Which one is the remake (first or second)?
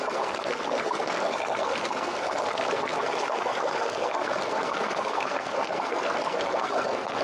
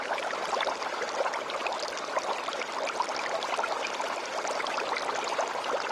first